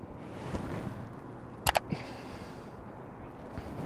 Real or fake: real